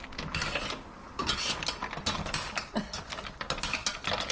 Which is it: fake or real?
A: real